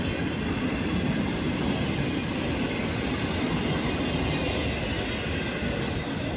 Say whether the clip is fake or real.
real